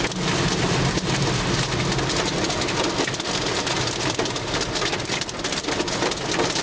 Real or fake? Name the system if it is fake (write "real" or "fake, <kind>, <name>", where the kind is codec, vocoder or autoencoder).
real